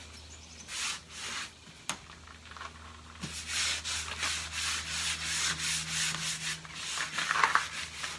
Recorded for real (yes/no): yes